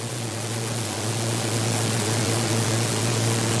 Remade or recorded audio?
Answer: remade